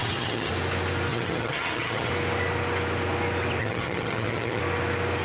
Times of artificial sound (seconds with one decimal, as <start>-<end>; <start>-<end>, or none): 0.0-0.5; 1.1-2.1; 3.6-4.6